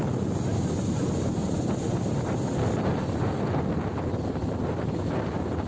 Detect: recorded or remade recorded